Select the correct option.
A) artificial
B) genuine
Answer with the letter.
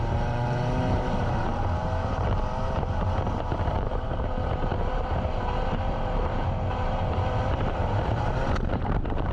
A